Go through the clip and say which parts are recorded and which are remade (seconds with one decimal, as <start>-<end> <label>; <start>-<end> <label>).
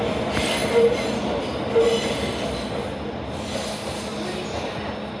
0.0-5.2 recorded